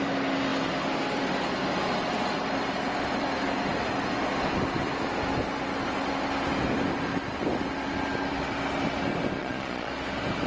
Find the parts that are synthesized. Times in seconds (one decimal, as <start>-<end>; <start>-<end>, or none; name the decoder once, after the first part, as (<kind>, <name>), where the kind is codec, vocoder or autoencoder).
9.4-9.9 (vocoder, Vocos)